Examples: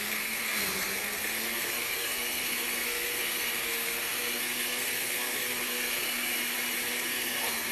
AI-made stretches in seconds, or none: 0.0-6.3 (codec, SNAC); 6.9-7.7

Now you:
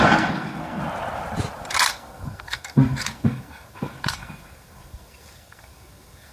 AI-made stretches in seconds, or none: 0.0-0.8 (codec, SNAC); 1.9-6.3

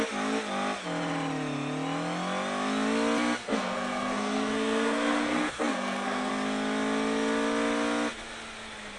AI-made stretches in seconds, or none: 3.4-6.3 (codec, SNAC)

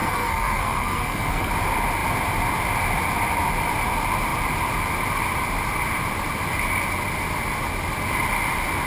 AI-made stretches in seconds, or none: 0.0-1.5 (codec, SNAC)

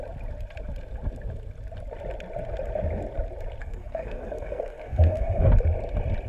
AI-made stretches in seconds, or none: 3.6-5.5 (codec, SNAC)

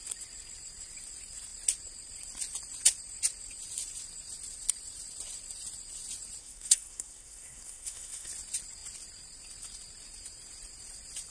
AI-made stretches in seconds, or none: 6.4-8.3 (codec, SNAC)

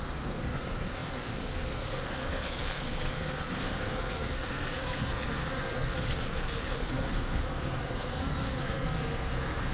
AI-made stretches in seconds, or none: 0.0-9.7 (codec, SNAC)

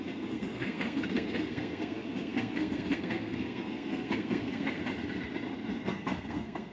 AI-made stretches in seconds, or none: 0.0-4.8 (codec, SNAC); 5.8-6.7